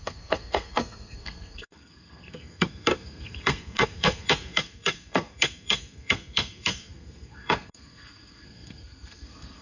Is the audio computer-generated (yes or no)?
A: yes